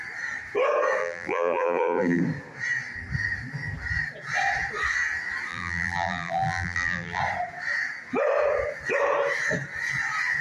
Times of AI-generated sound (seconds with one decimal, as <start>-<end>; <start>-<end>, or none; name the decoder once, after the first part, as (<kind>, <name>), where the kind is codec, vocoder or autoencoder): 1.0-2.2 (vocoder, BigVGAN v2); 5.5-7.2